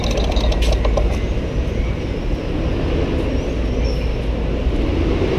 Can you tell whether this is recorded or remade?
recorded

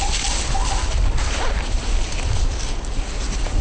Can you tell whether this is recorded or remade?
recorded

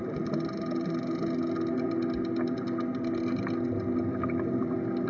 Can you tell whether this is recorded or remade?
recorded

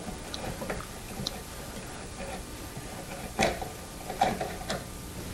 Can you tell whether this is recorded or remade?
recorded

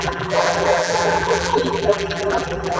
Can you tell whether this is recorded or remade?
remade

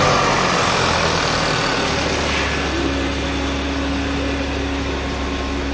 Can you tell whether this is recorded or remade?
recorded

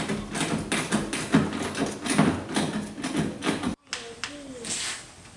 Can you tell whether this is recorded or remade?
recorded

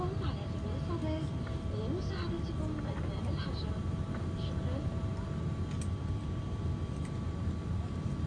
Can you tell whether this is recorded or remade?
recorded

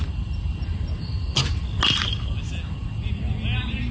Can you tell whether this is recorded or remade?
recorded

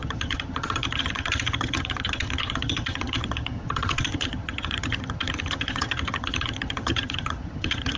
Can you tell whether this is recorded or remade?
remade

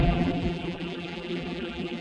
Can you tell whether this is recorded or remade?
remade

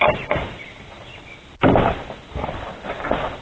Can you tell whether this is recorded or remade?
recorded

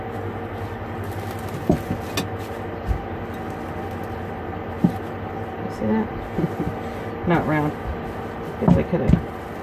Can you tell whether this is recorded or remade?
recorded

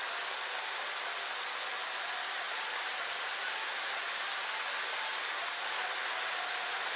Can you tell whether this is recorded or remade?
recorded